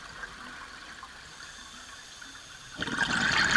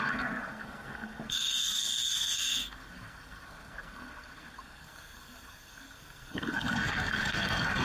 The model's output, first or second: second